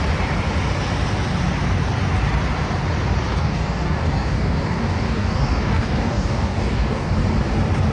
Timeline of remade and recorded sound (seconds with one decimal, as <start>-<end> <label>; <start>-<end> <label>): 0.0-3.3 recorded; 3.3-7.1 remade; 7.1-7.9 recorded